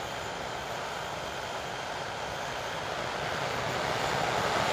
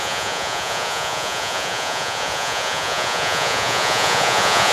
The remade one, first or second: second